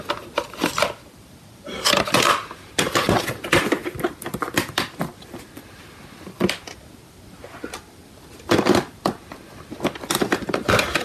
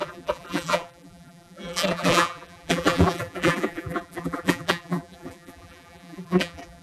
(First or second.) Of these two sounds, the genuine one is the first